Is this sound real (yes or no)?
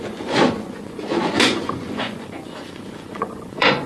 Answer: no